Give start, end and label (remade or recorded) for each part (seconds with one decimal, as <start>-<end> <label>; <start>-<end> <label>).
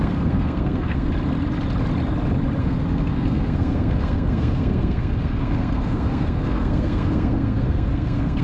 0.0-1.1 remade; 1.1-2.6 recorded; 2.6-8.4 remade